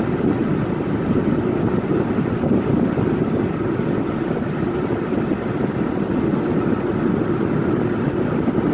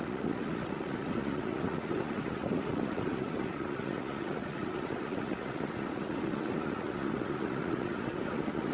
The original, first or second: first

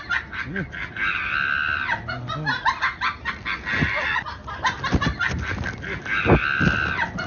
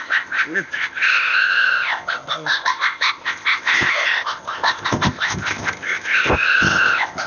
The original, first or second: first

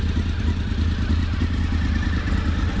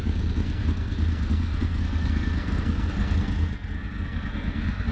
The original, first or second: first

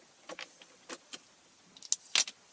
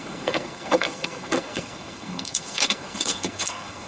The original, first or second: first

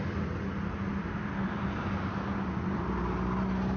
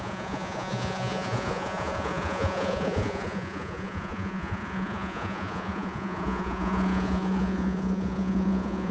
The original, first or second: first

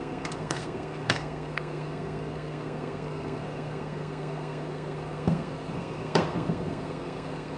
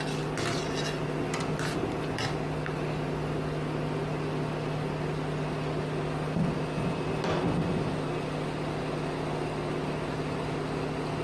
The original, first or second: second